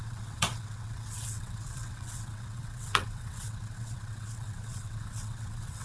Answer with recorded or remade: remade